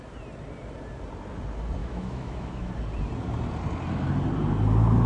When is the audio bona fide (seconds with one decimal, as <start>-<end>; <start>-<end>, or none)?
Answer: 0.0-1.8; 2.7-5.1